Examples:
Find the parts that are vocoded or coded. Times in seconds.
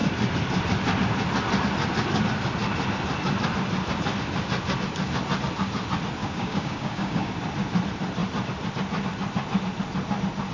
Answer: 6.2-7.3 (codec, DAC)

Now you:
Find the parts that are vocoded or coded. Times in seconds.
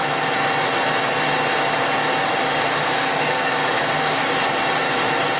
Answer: 2.3-4.4 (codec, DAC)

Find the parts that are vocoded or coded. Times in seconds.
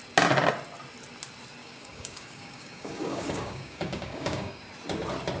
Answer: 1.6-4.6 (codec, DAC)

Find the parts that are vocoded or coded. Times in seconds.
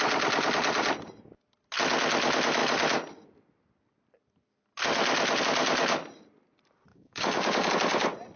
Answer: 6.9-7.7 (codec, DAC)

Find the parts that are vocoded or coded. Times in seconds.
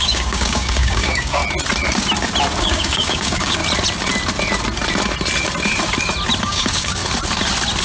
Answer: 0.0-1.4 (codec, DAC); 2.6-3.6; 6.4-7.0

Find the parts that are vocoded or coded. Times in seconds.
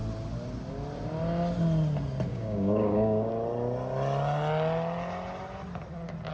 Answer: 2.3-3.3 (codec, DAC)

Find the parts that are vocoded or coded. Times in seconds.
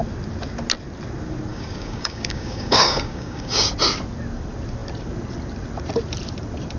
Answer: 1.5-3.7 (codec, DAC)